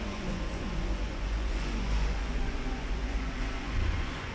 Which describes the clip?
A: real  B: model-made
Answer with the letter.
B